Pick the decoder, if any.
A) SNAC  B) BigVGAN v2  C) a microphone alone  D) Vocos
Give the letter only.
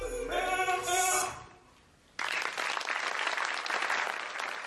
C